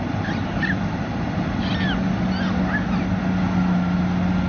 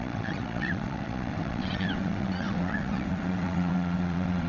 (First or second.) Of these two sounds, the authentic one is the first